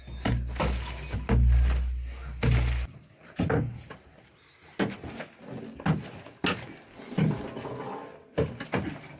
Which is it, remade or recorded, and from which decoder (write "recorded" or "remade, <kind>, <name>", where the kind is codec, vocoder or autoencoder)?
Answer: recorded